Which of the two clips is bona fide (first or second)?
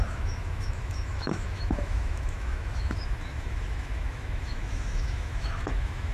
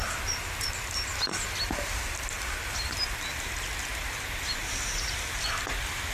second